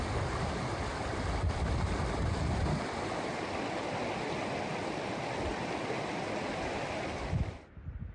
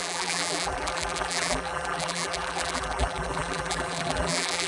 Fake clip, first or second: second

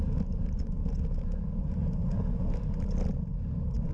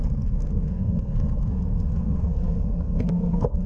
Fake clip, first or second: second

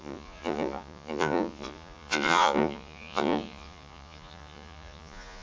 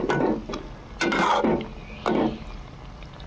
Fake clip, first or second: first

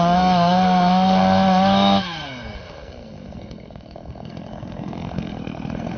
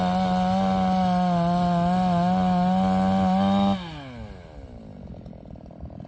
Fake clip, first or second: first